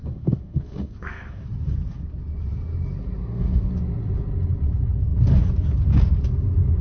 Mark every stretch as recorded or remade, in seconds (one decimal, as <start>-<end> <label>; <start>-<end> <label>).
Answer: 0.0-1.4 remade; 1.4-3.2 recorded; 3.2-3.7 remade; 3.7-6.8 recorded